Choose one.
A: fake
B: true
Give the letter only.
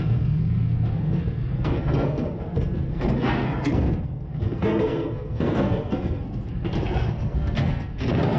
A